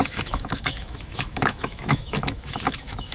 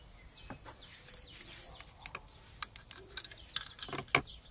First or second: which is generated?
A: first